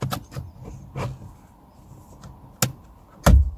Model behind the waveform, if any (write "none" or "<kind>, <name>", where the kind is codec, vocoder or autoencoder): none